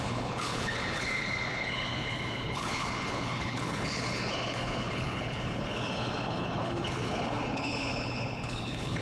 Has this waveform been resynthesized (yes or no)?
yes